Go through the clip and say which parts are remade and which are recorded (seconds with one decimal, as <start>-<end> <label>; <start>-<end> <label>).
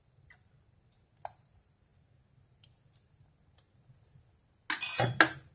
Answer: 0.0-1.9 remade; 1.9-5.5 recorded